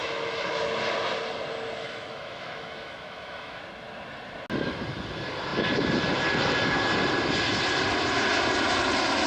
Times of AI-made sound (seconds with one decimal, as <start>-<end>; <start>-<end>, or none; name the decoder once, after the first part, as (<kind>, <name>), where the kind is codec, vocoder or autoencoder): 0.0-0.6 (autoencoder, DAC-VAE); 1.8-3.6